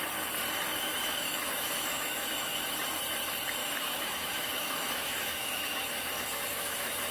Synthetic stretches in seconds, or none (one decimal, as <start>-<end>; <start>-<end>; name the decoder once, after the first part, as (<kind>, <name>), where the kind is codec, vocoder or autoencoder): 0.7-2.8 (autoencoder, DAC-VAE); 3.6-7.1